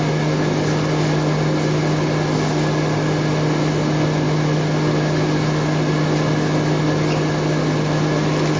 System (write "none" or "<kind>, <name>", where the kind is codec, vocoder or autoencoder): none